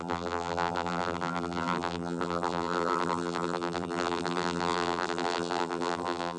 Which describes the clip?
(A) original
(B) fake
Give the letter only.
B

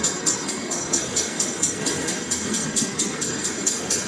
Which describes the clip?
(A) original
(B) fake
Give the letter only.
B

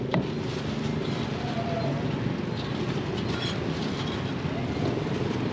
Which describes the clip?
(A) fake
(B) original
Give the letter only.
B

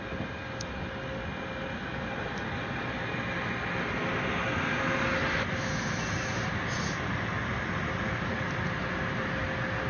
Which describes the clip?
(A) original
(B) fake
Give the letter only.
A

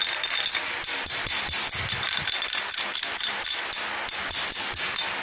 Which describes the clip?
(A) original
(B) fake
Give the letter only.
A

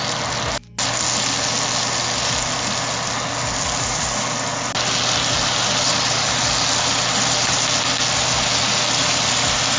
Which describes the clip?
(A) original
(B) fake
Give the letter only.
A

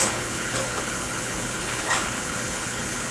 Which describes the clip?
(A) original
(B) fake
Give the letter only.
B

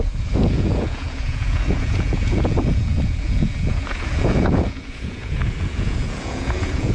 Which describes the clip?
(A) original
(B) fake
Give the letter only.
B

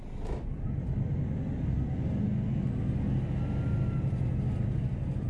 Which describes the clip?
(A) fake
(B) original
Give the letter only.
B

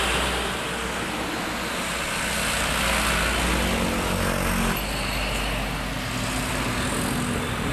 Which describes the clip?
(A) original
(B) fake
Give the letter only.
A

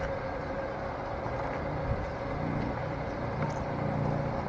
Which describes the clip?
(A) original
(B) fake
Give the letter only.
A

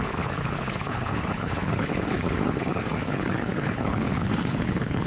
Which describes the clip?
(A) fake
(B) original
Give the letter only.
A